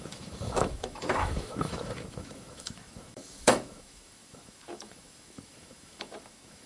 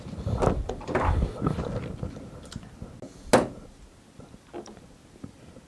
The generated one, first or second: first